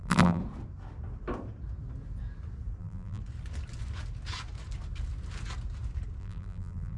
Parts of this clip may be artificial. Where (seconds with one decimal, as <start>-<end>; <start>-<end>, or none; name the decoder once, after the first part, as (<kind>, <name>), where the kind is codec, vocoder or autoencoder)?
0.0-0.4 (vocoder, BigVGAN v2); 2.8-3.2; 6.2-7.0